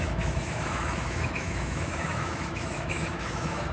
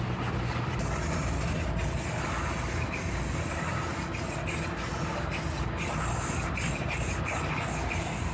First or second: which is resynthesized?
first